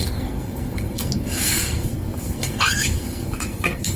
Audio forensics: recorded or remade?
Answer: remade